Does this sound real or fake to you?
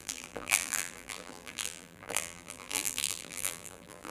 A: fake